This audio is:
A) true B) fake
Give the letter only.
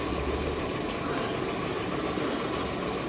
A